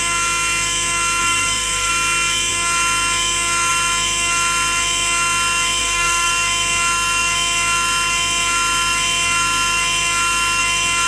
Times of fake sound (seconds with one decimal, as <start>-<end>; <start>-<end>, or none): 1.2-1.9; 5.8-6.3